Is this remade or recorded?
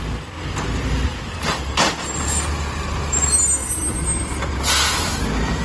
recorded